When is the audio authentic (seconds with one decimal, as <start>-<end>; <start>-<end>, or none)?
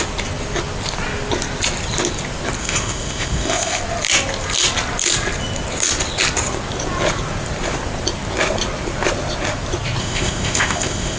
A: 0.0-2.6; 3.8-10.0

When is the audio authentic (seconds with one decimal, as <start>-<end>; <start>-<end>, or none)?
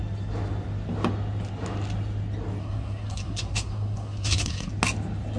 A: 0.0-2.6; 4.7-5.4